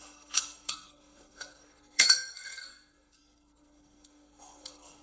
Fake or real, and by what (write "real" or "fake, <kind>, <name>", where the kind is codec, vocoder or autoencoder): fake, codec, SNAC